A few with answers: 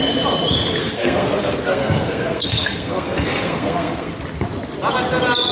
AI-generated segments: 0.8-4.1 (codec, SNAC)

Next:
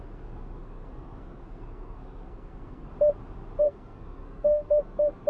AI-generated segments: 0.0-2.9 (codec, SNAC); 3.6-5.3

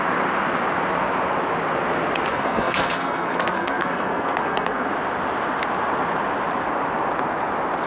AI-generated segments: 2.3-4.9 (codec, SNAC)